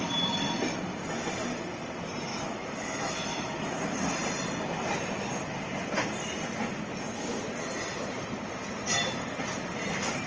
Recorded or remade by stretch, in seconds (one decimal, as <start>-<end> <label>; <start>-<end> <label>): 0.0-2.3 recorded; 2.3-3.8 remade; 3.8-10.3 recorded